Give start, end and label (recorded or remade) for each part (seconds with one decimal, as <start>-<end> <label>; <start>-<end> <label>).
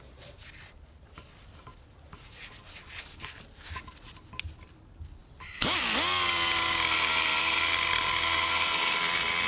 0.0-9.5 recorded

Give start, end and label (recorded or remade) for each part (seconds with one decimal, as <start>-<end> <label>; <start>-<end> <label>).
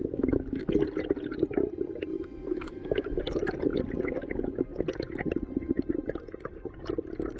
0.0-0.7 remade; 0.7-2.1 recorded; 2.1-3.2 remade; 3.2-7.4 recorded